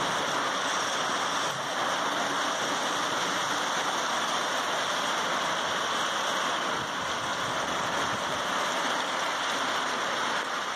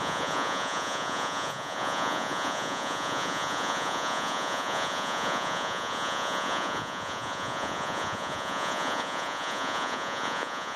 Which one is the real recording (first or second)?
first